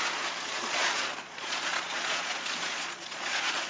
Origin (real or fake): fake